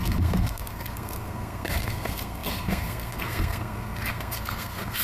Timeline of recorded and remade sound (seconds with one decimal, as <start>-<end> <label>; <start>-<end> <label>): 0.0-5.0 remade